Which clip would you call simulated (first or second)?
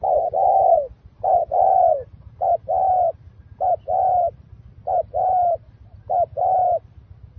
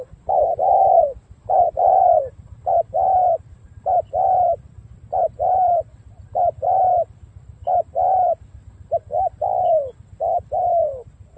second